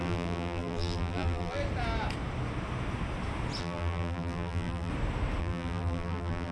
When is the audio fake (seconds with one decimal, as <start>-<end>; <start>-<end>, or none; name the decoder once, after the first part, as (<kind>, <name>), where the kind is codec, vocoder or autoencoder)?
0.0-1.6 (vocoder, BigVGAN v2); 3.6-4.9; 5.4-6.5